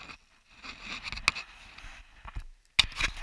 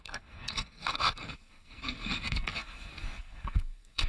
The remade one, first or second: second